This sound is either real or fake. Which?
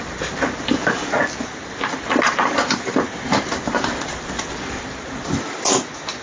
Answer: real